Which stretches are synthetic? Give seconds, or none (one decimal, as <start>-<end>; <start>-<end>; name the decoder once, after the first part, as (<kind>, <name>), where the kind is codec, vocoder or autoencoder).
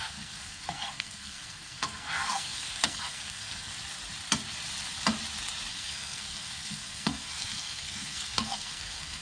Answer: 0.0-3.7 (codec, SNAC); 5.7-9.2